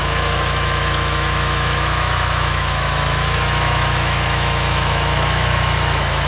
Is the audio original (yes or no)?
no